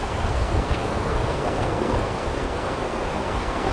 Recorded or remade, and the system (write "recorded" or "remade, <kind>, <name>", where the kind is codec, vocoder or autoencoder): remade, codec, SNAC